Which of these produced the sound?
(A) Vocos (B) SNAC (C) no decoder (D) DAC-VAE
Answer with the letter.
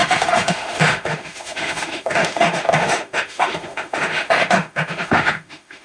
D